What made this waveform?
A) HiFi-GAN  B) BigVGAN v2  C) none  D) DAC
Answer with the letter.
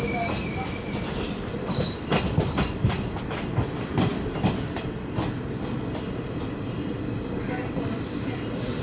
C